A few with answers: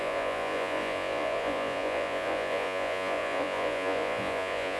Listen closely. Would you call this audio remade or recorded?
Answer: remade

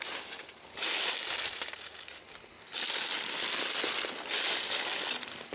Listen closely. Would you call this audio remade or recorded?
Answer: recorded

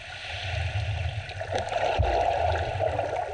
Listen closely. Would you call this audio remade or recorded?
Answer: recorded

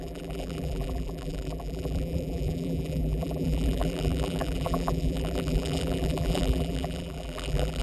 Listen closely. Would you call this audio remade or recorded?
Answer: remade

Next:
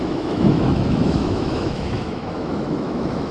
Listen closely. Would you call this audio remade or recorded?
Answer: remade